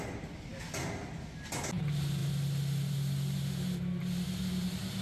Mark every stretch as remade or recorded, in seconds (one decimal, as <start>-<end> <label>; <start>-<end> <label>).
0.0-5.0 recorded